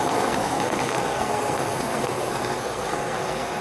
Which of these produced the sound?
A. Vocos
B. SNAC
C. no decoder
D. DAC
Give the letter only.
B